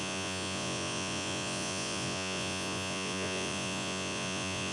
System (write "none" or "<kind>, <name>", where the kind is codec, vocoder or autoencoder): vocoder, Vocos